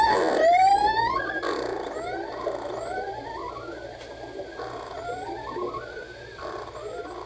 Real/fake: real